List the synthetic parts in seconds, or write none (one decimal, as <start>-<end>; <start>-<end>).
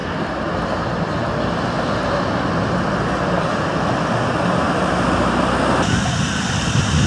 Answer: none